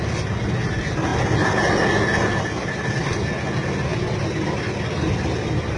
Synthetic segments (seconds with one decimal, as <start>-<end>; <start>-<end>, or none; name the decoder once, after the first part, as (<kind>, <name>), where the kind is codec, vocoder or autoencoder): 1.1-3.4 (vocoder, BigVGAN v2); 3.9-5.8